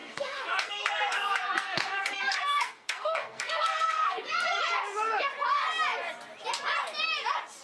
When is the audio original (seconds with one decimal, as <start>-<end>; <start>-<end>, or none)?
4.6-7.6